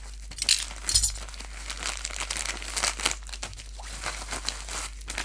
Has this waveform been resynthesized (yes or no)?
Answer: no